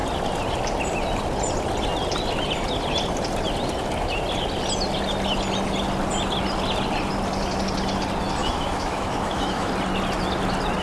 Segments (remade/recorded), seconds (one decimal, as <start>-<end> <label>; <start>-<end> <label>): 0.0-8.4 recorded; 8.4-9.7 remade; 9.7-10.8 recorded